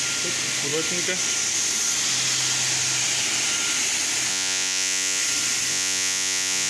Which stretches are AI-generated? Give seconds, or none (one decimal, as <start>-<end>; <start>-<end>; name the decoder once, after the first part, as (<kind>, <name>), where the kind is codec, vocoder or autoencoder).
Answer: 4.3-5.2 (vocoder, Vocos); 5.7-6.7